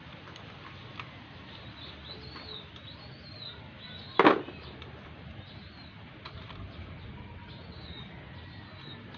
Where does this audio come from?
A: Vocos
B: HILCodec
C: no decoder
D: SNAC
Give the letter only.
C